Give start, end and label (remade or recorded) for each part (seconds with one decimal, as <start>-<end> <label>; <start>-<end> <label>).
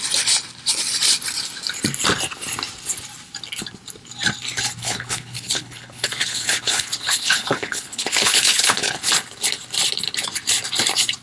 0.0-4.8 recorded; 4.8-9.1 remade; 9.1-11.2 recorded